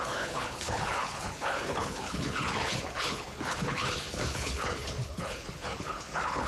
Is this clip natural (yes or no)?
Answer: no